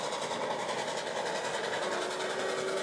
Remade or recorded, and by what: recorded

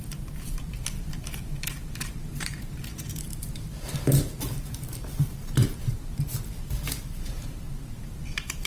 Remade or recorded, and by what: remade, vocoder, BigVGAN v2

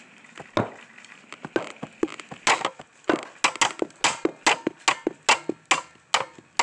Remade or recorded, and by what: recorded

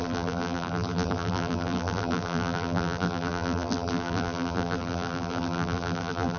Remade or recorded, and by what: remade, vocoder, BigVGAN v2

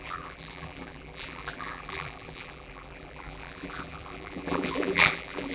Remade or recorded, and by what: remade, vocoder, BigVGAN v2